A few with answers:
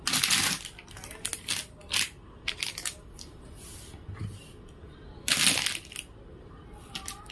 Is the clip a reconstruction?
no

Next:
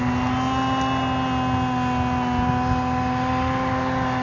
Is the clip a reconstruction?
no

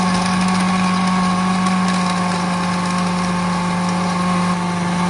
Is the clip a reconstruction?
no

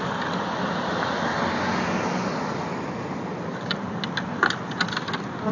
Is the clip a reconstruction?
no